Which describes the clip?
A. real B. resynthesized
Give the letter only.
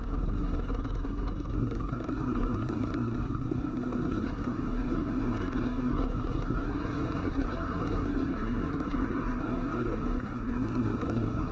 B